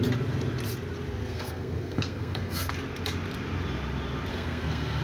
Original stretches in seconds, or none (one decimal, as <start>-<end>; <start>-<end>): 0.0-1.2; 2.7-4.3